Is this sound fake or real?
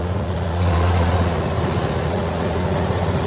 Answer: fake